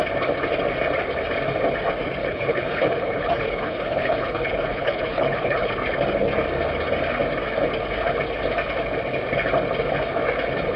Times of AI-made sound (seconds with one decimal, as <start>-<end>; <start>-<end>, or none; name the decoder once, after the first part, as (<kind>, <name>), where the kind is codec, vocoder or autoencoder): 2.2-5.7 (codec, HILCodec)